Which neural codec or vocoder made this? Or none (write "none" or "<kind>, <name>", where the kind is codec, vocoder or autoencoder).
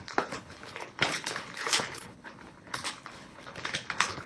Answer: codec, HILCodec